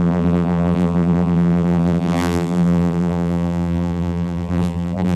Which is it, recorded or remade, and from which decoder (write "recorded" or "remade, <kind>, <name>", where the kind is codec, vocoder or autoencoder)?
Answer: remade, vocoder, BigVGAN v2